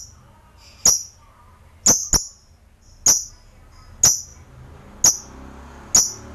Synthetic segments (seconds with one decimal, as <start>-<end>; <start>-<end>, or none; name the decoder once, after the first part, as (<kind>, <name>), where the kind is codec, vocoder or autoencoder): none